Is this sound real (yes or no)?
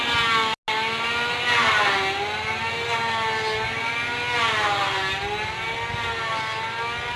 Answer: yes